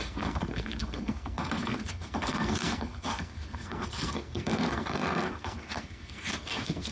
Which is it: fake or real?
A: fake